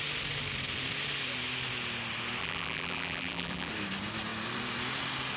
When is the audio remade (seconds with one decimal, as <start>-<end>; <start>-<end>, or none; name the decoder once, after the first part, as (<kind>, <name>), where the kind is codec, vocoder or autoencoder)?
2.4-3.7 (vocoder, BigVGAN v2)